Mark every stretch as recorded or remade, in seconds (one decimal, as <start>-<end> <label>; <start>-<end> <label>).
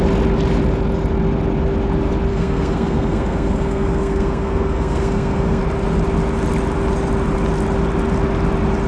0.0-2.3 recorded; 2.3-5.6 remade; 5.6-8.9 recorded